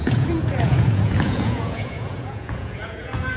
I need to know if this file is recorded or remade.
remade